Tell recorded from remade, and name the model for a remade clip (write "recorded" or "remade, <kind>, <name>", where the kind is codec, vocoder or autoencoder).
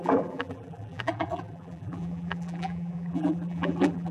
remade, vocoder, BigVGAN v2